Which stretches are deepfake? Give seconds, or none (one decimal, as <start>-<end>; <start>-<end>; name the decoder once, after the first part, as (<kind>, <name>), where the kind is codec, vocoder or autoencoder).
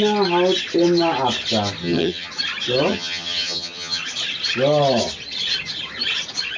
1.8-2.3 (vocoder, HiFi-GAN); 2.9-4.0